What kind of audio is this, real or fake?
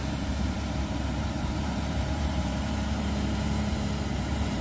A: fake